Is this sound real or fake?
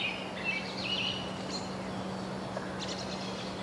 real